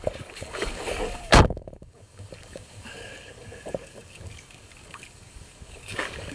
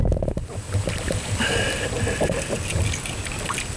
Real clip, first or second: second